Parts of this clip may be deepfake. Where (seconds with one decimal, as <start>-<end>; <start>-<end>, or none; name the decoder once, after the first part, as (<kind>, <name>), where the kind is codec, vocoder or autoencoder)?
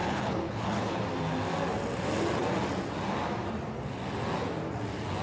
0.0-1.0 (codec, HILCodec)